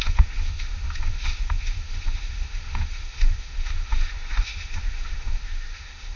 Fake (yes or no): yes